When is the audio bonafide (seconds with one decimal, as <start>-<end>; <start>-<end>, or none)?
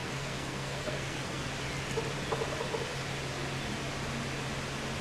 1.5-5.0